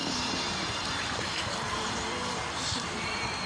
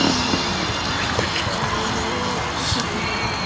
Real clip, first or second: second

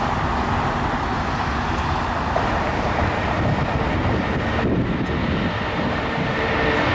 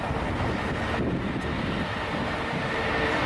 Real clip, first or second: first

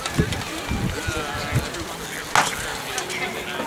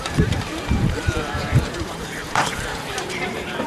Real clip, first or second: first